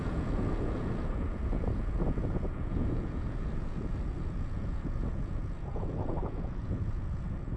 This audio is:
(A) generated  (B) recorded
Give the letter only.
A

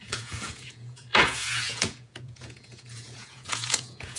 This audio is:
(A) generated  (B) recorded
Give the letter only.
A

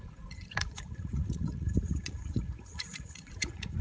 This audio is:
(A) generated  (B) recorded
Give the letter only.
A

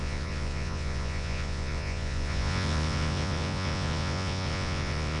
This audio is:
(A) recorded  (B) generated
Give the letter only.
B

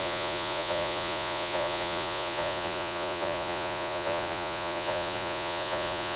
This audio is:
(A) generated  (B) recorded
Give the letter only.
A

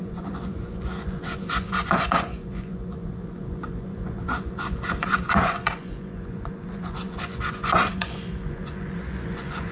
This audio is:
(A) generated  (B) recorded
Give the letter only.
A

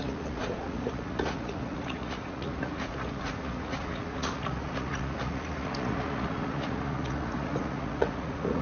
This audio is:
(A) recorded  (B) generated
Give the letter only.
B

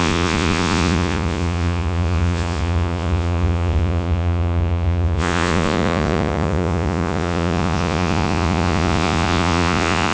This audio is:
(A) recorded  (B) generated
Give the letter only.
B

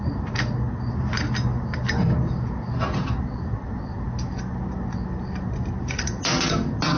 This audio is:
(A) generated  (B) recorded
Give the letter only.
B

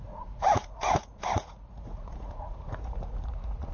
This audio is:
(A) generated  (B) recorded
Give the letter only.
A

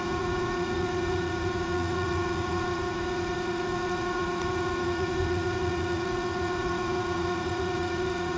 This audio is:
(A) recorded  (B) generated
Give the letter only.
B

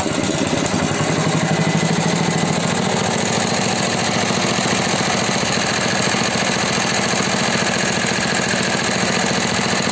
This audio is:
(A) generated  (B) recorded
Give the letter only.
B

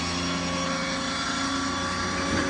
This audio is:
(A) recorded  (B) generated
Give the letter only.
A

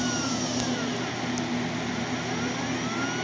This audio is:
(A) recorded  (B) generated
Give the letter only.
A